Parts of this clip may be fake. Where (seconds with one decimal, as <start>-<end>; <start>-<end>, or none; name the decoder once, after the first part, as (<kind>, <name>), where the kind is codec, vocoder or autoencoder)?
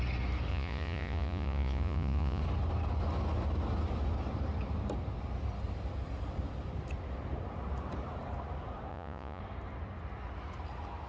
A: 0.5-2.4 (vocoder, Vocos); 8.9-9.4